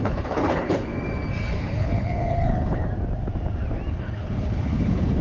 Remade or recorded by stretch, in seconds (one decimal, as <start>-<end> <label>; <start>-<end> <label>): 0.0-0.9 remade; 0.9-1.6 recorded; 1.6-2.8 remade; 2.8-3.9 recorded; 3.9-5.2 remade